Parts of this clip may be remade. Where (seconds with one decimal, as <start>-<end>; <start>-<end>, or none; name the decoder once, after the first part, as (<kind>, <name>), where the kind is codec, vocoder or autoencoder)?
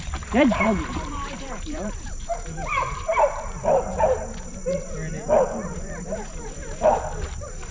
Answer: 0.0-7.7 (vocoder, BigVGAN v2)